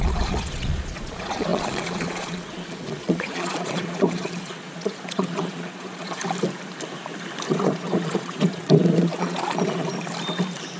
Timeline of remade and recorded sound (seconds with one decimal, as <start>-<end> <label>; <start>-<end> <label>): 0.0-6.2 remade; 6.2-7.5 recorded; 7.5-9.9 remade; 9.9-10.8 recorded

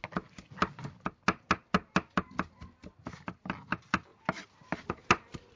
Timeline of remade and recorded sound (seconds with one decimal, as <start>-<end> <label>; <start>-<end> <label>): 0.0-5.6 recorded